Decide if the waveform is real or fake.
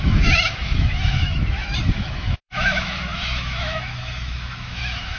fake